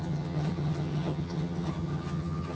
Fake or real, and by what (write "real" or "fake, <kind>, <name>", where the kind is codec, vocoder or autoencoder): fake, vocoder, HiFi-GAN